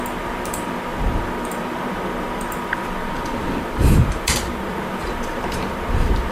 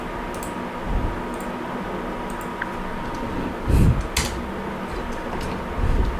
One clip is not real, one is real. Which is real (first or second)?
second